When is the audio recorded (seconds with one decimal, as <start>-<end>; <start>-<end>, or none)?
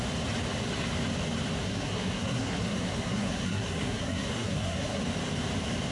0.0-1.6; 5.0-5.9